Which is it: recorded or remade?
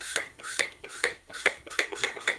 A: remade